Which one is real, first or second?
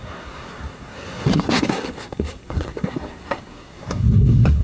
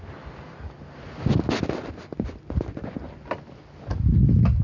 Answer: second